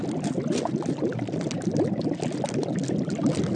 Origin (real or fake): real